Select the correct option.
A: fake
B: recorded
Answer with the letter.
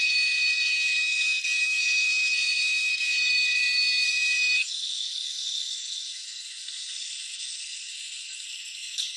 A